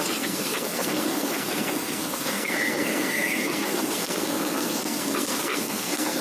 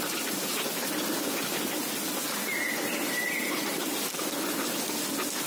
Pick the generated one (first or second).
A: first